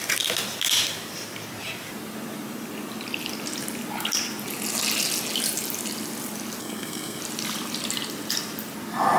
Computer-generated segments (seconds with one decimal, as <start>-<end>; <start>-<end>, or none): 6.6-7.2